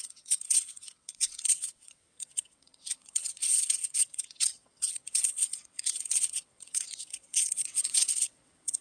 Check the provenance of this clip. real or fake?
fake